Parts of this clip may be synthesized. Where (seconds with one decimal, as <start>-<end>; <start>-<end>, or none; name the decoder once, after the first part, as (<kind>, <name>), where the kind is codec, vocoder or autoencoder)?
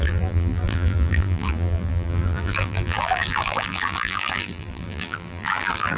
0.0-6.0 (vocoder, BigVGAN v2)